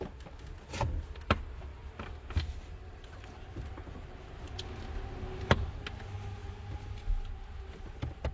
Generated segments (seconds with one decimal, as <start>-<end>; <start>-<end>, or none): none